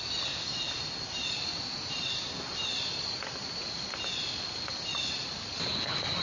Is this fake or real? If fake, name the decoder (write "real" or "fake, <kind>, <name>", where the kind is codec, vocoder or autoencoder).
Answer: real